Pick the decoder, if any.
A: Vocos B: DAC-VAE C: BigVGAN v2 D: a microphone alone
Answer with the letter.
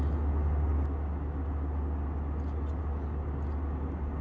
D